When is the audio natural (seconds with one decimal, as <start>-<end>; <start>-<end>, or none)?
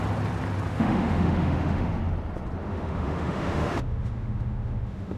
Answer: 0.0-0.7; 2.0-2.6